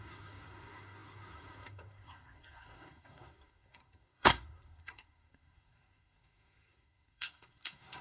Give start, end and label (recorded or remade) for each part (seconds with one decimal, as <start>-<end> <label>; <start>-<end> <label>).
0.0-8.0 remade